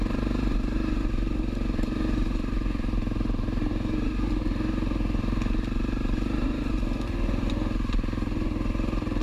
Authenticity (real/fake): real